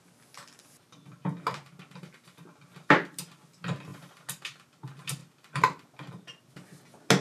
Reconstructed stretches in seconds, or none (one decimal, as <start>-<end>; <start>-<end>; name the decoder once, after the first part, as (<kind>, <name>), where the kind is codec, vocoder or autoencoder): 5.2-6.1 (vocoder, BigVGAN v2)